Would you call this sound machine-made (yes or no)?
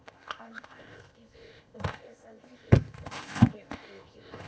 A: yes